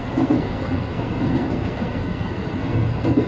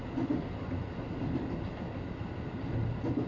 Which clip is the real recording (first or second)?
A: second